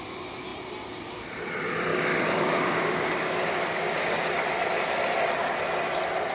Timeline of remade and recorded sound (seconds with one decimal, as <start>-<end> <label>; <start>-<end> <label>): 0.0-1.9 recorded; 1.9-4.2 remade; 4.2-6.3 recorded